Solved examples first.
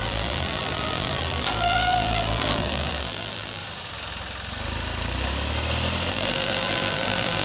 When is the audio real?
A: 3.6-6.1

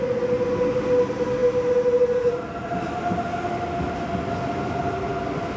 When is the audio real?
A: 0.0-5.6

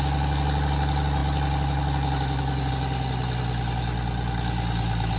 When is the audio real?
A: 0.0-5.2

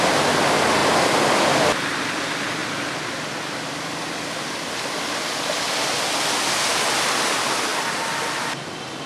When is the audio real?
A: 0.0-2.6; 4.2-9.1

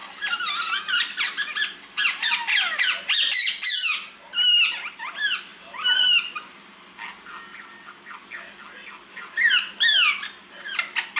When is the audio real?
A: 3.5-11.2

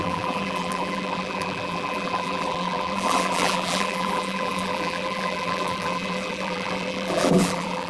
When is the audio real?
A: none

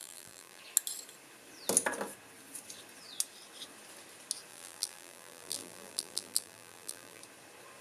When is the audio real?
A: 0.6-4.5; 7.2-7.8

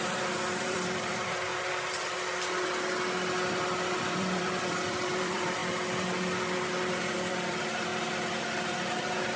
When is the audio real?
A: 1.5-4.0; 5.6-6.9; 7.9-9.4